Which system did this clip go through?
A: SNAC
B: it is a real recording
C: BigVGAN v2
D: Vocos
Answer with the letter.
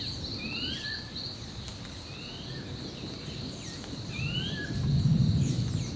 B